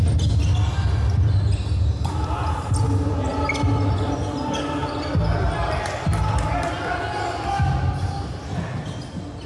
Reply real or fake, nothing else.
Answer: real